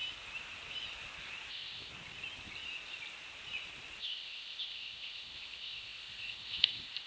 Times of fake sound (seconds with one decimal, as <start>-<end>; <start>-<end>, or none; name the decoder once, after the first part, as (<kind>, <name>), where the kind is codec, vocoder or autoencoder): 1.5-1.9 (codec, ZipCodec); 4.0-7.1